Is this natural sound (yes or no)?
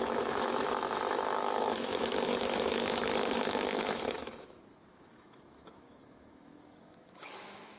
no